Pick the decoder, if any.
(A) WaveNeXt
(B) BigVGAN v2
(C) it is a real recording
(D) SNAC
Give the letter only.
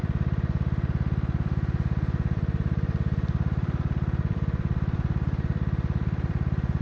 B